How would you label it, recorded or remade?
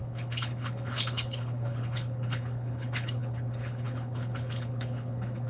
remade